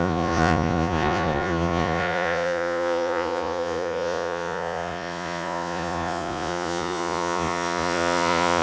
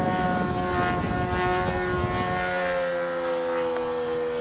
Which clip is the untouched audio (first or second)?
second